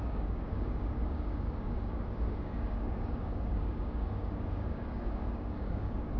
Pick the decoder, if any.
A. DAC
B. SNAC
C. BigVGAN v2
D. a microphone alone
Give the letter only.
A